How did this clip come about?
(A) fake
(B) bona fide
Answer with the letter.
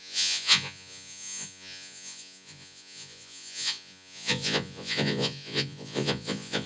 A